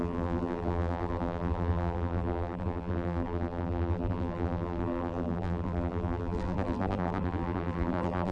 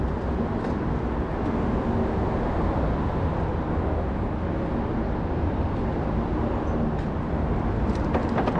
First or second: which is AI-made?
first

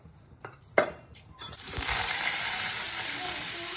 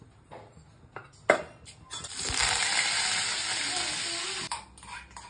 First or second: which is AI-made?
first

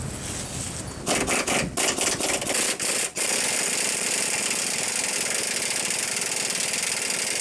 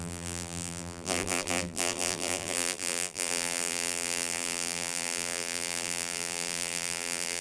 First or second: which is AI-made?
second